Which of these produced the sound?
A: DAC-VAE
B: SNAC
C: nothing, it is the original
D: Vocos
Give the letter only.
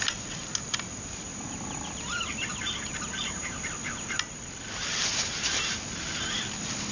C